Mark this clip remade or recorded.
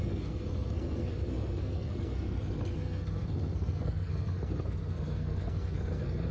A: remade